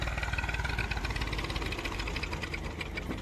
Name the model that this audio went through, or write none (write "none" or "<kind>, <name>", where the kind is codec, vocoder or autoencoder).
none